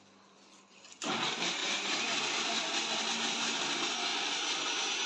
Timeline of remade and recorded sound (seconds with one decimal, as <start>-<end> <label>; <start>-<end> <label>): 0.0-1.6 recorded; 1.6-2.2 remade; 2.2-5.1 recorded